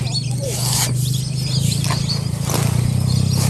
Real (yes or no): yes